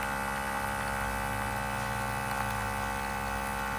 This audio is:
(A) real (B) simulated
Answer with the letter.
A